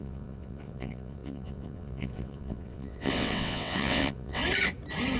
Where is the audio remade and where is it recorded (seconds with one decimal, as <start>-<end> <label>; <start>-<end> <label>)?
0.0-4.4 remade; 4.4-5.2 recorded